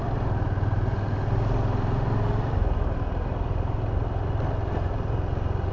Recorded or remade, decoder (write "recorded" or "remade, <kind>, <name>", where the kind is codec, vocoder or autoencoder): recorded